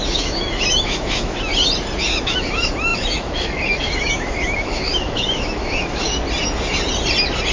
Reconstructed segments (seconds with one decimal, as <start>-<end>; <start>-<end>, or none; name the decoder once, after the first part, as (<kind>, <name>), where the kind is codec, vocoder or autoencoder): 0.0-1.5 (autoencoder, DAC-VAE); 2.2-6.1